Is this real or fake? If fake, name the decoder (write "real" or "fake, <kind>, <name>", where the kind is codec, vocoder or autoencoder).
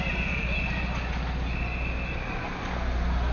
real